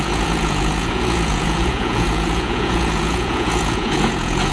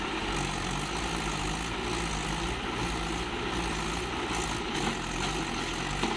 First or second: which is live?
second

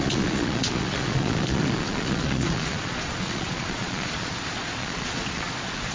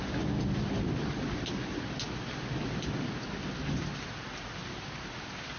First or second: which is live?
second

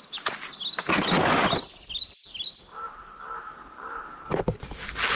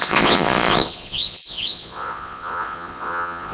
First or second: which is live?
first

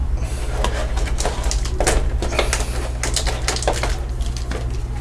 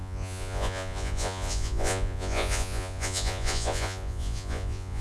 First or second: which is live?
first